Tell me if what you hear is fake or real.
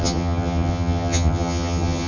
fake